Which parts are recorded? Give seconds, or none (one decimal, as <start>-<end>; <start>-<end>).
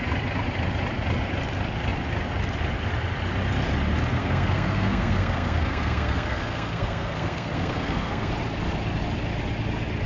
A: 0.0-4.2; 8.3-10.1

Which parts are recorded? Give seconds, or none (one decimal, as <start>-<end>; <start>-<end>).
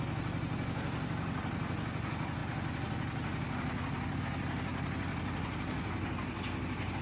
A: 0.0-7.0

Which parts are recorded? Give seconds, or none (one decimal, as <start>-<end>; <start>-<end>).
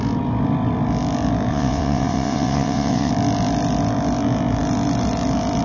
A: 0.0-1.5; 3.1-5.6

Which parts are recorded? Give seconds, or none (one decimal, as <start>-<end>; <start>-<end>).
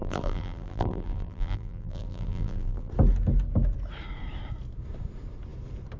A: 2.9-6.0